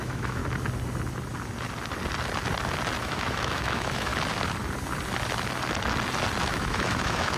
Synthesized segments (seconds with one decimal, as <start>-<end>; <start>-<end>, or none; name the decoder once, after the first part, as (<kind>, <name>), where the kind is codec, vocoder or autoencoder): 0.0-0.4 (autoencoder, DAC-VAE); 3.0-4.1; 6.4-7.4